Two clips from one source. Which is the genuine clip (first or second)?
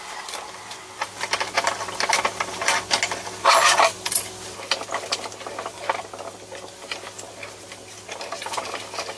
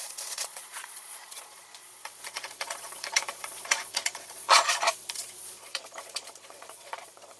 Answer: first